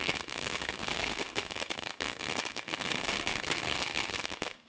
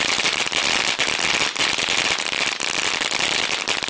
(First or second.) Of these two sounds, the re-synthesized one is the first